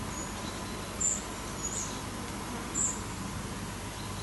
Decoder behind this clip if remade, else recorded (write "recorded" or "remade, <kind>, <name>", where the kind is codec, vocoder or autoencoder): recorded